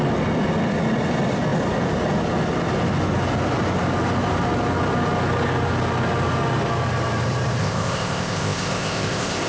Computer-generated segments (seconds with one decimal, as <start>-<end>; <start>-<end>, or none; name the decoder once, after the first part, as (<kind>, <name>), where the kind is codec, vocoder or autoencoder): 7.6-9.5 (codec, ZipCodec)